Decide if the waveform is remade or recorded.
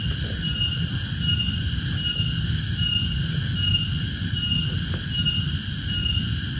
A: recorded